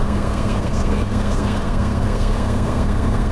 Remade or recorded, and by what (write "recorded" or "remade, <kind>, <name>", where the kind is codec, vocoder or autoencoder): remade, codec, SNAC